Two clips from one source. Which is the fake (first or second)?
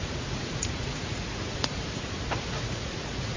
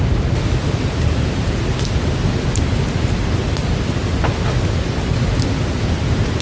first